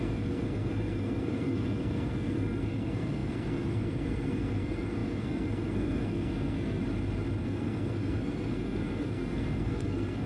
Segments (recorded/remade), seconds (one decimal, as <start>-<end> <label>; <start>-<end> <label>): 0.0-6.8 remade; 6.8-7.4 recorded; 7.4-10.3 remade